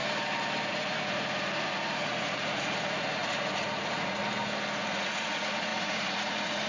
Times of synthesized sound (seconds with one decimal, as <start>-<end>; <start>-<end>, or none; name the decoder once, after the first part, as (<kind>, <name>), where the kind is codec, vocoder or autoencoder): 0.7-4.2 (vocoder, Vocos); 4.8-6.7